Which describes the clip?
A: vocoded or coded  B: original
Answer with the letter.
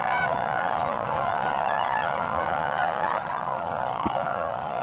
A